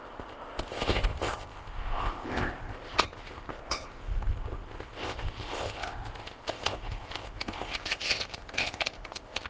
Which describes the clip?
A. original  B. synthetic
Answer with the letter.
B